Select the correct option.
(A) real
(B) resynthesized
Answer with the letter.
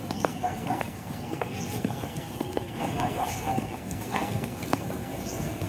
B